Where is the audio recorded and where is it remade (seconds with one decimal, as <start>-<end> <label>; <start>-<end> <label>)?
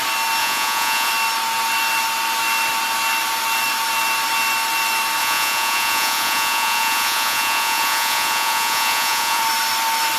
0.0-0.4 recorded; 0.4-1.1 remade; 1.1-5.2 recorded; 5.2-9.4 remade; 9.4-10.2 recorded